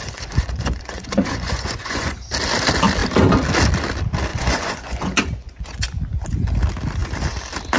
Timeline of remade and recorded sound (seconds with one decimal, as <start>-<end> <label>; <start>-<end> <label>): 0.0-2.3 remade; 2.3-4.3 recorded; 4.3-6.0 remade; 6.0-7.8 recorded